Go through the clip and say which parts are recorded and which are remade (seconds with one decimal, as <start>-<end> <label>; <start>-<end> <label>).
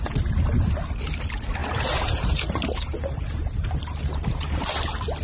0.0-1.6 recorded; 1.6-4.7 remade; 4.7-5.2 recorded